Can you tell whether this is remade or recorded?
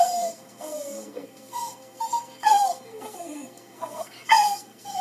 remade